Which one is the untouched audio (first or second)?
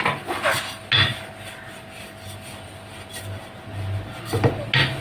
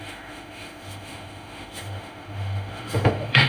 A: first